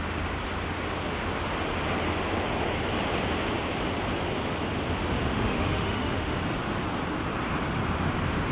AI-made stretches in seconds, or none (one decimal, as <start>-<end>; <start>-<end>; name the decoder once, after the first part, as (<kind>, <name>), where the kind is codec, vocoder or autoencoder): 5.3-6.4 (autoencoder, DAC-VAE)